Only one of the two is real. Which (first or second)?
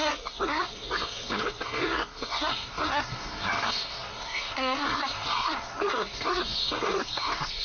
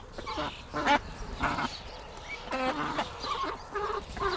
second